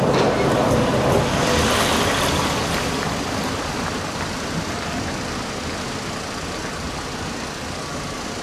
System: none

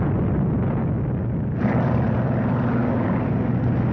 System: none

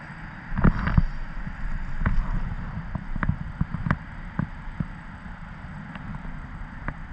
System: none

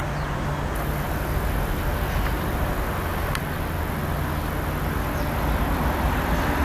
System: none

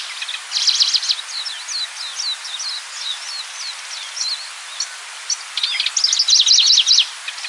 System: none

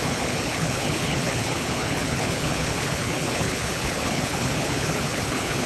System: codec, HILCodec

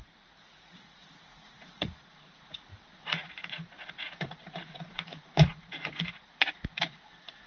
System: vocoder, Vocos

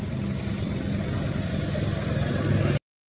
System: none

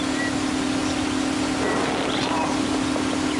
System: none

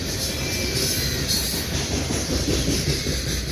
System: none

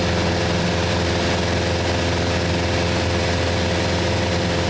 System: none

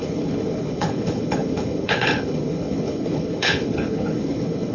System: codec, HILCodec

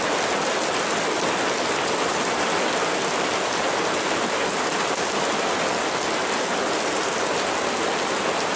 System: none